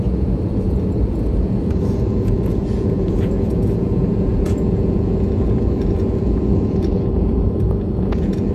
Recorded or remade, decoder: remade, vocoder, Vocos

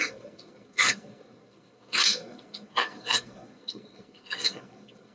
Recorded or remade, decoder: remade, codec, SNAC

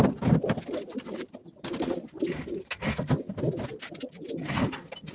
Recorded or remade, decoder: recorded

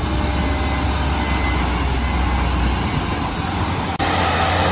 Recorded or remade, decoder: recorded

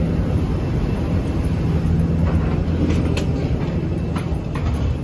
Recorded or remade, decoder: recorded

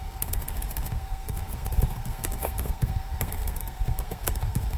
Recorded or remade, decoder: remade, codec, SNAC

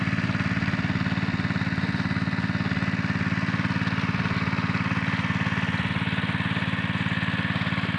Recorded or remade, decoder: recorded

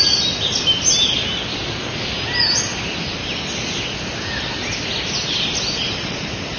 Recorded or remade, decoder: recorded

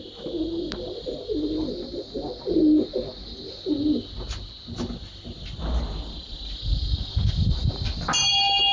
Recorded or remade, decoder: recorded